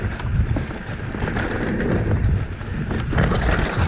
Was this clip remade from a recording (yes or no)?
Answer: no